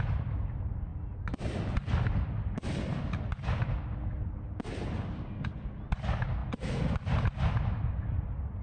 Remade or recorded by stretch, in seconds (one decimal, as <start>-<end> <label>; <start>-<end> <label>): 0.0-8.6 recorded